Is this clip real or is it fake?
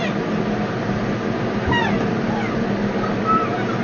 real